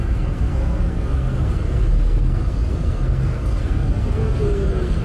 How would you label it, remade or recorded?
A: remade